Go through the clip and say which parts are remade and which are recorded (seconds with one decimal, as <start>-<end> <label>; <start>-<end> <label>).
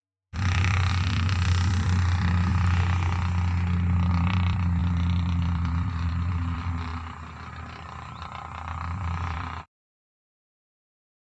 0.0-2.5 remade; 2.5-4.1 recorded; 4.1-11.3 remade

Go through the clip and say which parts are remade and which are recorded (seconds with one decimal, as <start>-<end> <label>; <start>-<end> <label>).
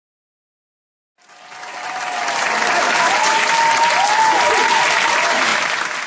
0.0-5.5 recorded; 5.5-6.1 remade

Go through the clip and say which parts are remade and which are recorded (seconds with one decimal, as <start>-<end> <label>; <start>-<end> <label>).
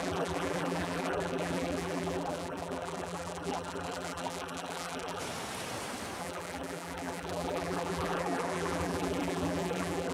0.0-5.2 remade; 5.2-6.2 recorded; 6.2-10.1 remade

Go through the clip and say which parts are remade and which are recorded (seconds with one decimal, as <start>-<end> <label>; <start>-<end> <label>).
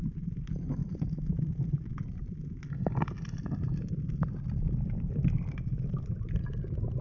0.0-7.0 remade